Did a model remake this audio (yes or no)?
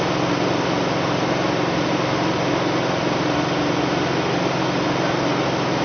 no